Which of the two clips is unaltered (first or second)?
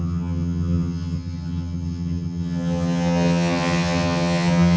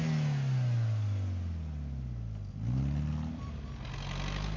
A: second